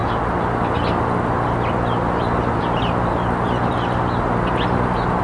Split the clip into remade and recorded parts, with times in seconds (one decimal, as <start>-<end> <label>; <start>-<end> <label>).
0.0-5.2 recorded